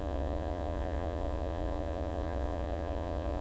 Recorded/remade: remade